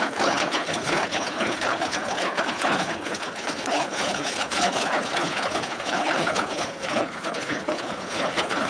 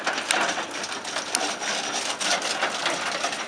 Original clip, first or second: second